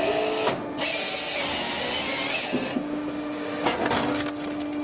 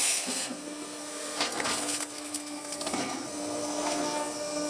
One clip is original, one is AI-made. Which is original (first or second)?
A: first